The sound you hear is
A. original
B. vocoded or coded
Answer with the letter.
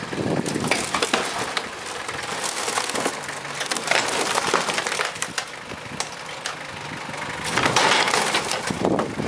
A